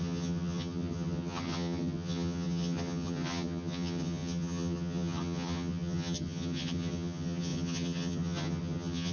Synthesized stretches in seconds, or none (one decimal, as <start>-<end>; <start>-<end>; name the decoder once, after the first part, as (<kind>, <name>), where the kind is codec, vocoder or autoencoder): 0.0-9.1 (vocoder, HiFi-GAN)